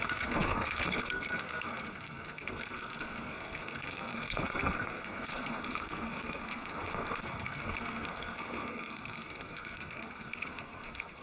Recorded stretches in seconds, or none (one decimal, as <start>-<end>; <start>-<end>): none